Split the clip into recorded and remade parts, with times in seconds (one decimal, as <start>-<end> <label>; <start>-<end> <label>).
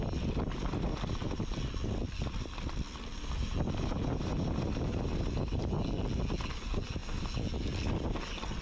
0.0-8.6 recorded